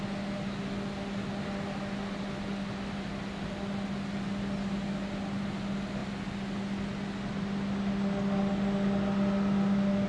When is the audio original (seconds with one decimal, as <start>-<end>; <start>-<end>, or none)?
0.0-10.1